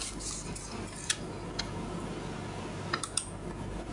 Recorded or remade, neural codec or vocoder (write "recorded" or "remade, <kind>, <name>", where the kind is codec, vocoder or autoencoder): recorded